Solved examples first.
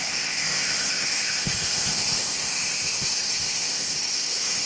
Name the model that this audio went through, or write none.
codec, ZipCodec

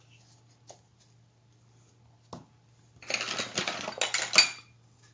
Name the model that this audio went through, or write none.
none